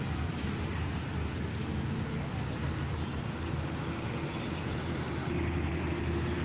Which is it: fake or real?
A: real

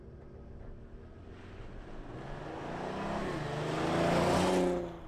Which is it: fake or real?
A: real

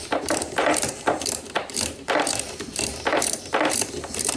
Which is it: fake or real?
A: fake